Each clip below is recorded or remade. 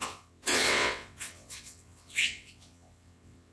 remade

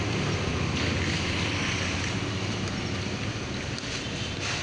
recorded